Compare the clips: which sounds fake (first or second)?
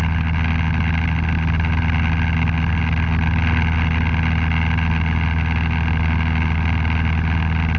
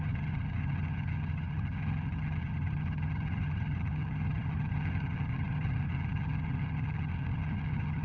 second